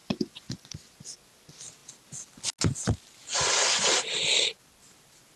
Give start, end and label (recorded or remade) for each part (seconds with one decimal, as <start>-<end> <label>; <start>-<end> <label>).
0.0-0.7 remade; 0.7-5.4 recorded